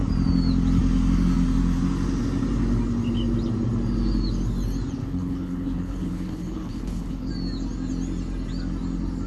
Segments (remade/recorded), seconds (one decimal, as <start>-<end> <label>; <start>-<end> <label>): 0.0-5.0 recorded; 5.0-7.3 remade; 7.3-9.3 recorded